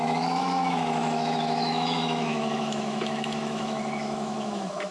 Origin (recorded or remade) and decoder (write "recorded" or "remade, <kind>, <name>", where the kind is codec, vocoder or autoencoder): remade, autoencoder, DAC-VAE